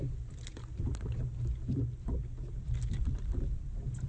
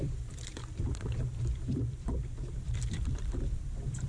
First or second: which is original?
first